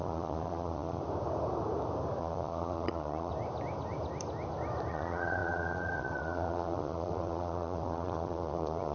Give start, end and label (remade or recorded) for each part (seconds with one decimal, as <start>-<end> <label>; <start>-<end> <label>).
0.0-1.0 remade; 1.0-2.2 recorded; 2.2-3.3 remade; 3.3-4.9 recorded; 4.9-8.9 remade